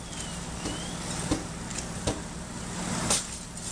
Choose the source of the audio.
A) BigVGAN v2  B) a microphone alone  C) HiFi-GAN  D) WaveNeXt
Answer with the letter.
B